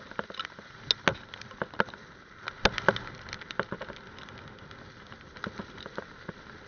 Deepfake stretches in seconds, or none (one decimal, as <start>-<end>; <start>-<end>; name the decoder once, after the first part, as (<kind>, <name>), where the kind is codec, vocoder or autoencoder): none